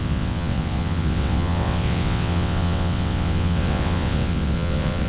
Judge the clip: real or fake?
fake